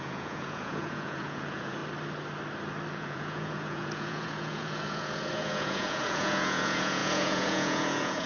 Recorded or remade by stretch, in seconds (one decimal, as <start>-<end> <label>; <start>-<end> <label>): 0.0-1.8 remade; 1.8-2.9 recorded; 2.9-8.3 remade

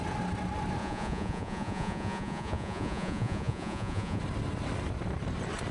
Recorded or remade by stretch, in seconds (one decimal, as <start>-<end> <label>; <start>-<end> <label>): 0.0-0.8 recorded; 0.8-4.2 remade; 4.2-5.7 recorded

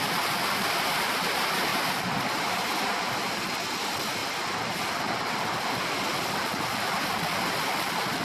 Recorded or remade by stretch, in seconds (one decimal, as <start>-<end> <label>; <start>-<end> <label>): 0.0-1.7 recorded; 1.7-3.4 remade; 3.4-4.2 recorded; 4.2-5.8 remade; 5.8-8.2 recorded

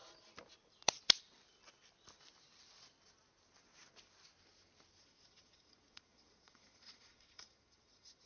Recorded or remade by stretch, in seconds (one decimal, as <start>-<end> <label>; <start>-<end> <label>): 0.0-5.0 recorded; 5.0-8.3 remade

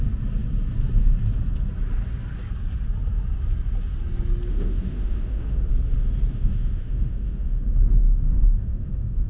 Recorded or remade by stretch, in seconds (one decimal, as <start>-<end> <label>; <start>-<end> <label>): 0.0-4.5 recorded; 4.5-5.7 remade; 5.7-6.3 recorded; 6.3-7.6 remade; 7.6-8.0 recorded; 8.0-9.3 remade

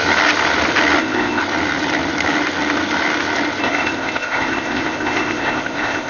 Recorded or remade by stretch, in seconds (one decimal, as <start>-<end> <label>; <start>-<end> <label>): 0.0-1.0 recorded; 1.0-1.4 remade; 1.4-3.6 recorded; 3.6-6.1 remade

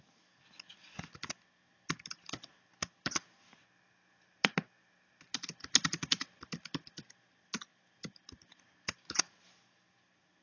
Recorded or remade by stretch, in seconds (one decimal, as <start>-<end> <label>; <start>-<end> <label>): 0.0-10.4 recorded